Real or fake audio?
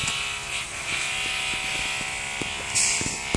real